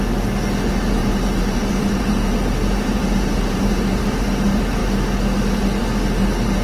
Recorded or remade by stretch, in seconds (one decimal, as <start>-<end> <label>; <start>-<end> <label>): 0.0-1.0 recorded; 1.0-4.2 remade; 4.2-6.6 recorded